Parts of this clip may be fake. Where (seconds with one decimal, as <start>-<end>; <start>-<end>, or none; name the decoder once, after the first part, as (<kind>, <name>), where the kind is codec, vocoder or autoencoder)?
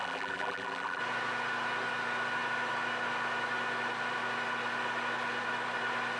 0.0-1.0 (vocoder, BigVGAN v2)